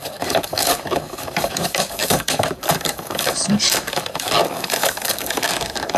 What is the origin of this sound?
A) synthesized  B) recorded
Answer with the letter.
A